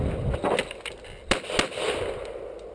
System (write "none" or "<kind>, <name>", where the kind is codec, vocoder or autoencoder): none